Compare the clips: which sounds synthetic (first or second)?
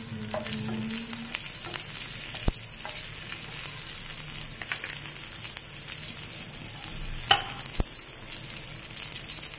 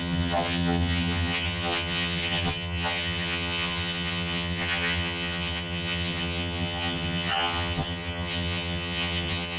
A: second